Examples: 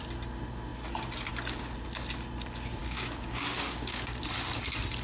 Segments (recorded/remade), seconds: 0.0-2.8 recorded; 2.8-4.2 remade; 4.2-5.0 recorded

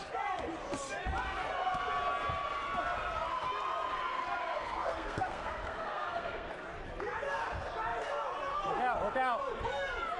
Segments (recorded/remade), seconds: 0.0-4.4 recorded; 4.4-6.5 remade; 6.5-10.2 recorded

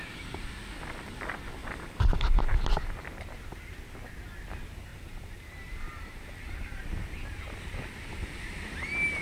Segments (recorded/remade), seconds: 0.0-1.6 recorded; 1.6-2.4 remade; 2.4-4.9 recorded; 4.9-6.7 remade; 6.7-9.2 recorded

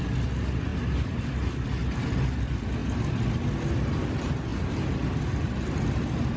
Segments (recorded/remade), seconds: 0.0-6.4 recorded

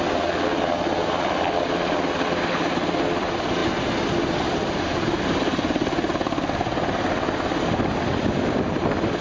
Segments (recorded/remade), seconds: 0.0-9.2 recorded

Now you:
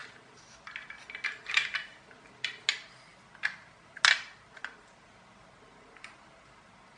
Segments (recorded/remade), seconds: 0.0-7.0 recorded